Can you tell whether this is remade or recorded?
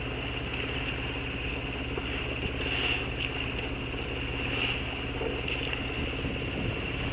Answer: recorded